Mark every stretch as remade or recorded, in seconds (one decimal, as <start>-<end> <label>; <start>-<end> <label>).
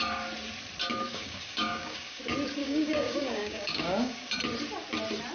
0.0-1.1 recorded; 1.1-2.2 remade; 2.2-2.6 recorded; 2.6-4.3 remade; 4.3-5.3 recorded